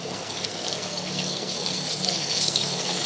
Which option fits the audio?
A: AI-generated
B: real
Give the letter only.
A